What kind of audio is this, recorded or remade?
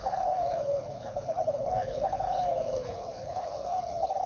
remade